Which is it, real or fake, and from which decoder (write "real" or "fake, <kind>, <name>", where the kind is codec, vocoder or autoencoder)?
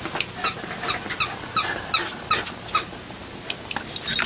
real